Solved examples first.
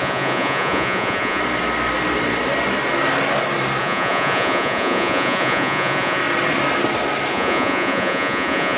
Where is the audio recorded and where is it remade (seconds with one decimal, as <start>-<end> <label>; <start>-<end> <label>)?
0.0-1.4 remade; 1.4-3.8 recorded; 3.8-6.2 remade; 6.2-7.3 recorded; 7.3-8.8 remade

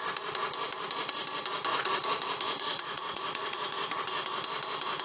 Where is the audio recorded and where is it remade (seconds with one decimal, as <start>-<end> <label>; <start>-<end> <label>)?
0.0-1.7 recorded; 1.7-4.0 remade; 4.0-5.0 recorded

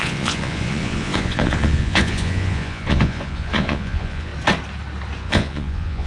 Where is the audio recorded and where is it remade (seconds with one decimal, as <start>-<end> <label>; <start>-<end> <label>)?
0.0-4.3 remade; 4.3-5.2 recorded; 5.2-6.1 remade

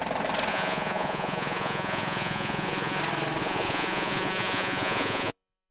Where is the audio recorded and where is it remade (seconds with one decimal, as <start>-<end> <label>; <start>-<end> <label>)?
0.0-0.5 recorded; 0.5-3.0 remade; 3.0-3.4 recorded; 3.4-5.7 remade